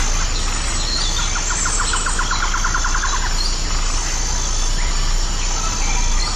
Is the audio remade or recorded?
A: recorded